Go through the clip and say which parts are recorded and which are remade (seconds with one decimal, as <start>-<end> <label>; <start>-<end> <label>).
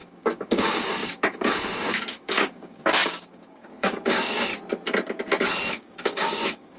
0.0-4.5 remade; 4.5-5.7 recorded; 5.7-6.8 remade